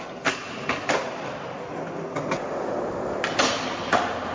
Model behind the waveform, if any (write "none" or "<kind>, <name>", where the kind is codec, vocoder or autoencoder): none